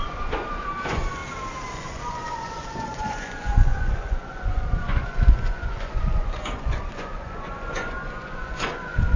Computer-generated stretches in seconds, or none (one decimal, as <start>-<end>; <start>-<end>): 0.0-1.2; 1.7-9.2